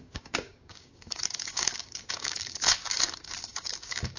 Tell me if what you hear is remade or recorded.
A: remade